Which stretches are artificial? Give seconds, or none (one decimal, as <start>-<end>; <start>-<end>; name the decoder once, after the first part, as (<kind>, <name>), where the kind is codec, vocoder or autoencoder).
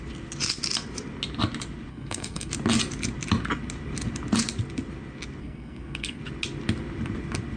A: 1.9-2.5 (codec, SNAC); 5.4-6.2